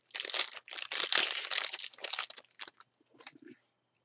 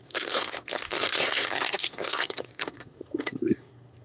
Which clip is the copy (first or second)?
second